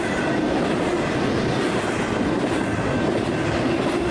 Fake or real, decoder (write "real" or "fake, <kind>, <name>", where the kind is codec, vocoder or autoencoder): real